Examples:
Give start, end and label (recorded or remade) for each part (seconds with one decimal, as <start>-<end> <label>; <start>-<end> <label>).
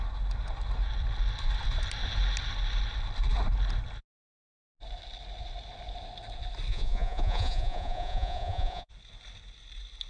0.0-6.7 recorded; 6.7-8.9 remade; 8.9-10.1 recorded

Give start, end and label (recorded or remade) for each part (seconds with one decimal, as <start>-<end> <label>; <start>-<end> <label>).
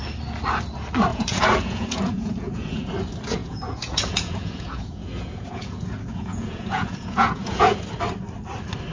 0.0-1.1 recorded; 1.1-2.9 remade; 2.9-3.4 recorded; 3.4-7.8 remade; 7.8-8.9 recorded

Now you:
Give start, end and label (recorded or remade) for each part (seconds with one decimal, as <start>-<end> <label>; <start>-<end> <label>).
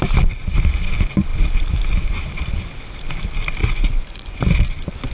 0.0-3.6 recorded; 3.6-4.4 remade; 4.4-5.1 recorded